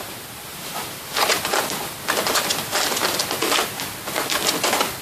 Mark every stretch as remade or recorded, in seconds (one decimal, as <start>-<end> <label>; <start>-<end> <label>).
0.0-0.5 recorded; 0.5-1.3 remade; 1.3-5.0 recorded